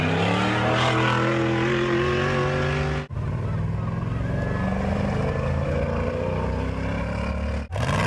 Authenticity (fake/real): real